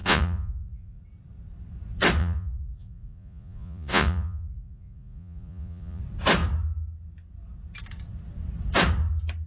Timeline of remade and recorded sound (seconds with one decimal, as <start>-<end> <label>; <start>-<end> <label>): 0.0-1.0 remade; 1.0-2.2 recorded; 2.2-6.0 remade; 6.0-9.5 recorded